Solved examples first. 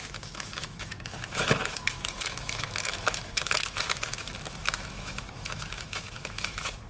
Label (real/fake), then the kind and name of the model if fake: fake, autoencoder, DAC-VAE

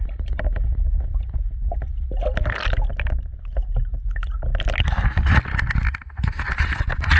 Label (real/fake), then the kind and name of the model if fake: real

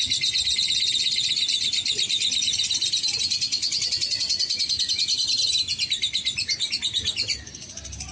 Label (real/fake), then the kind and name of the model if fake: real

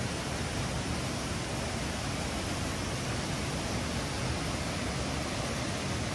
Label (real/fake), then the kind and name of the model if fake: real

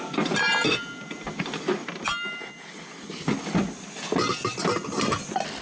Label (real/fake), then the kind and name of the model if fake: real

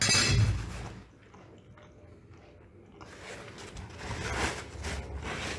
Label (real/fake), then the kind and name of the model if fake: real